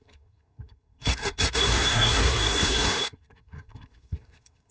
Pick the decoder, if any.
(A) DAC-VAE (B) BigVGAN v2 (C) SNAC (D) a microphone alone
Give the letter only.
C